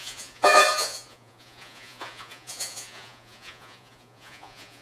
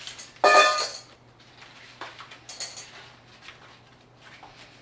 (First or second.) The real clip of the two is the second